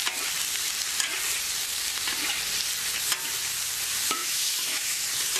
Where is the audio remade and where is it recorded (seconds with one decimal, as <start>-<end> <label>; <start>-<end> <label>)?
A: 0.0-4.2 recorded; 4.2-5.0 remade; 5.0-5.4 recorded